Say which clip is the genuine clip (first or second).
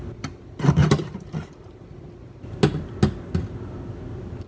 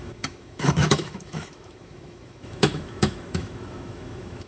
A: first